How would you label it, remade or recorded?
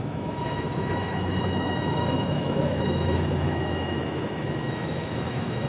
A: remade